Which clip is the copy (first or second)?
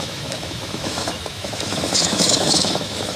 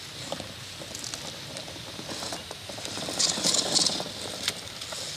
first